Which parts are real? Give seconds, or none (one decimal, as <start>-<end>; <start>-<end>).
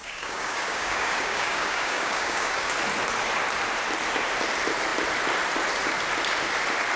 2.7-7.0